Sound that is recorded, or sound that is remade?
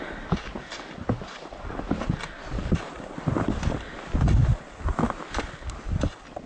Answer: recorded